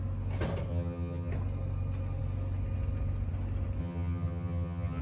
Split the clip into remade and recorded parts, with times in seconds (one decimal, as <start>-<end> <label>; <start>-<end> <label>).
0.0-0.7 recorded; 0.7-1.3 remade; 1.3-3.8 recorded; 3.8-5.0 remade